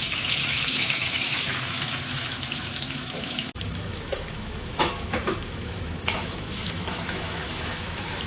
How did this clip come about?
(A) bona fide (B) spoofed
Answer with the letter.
B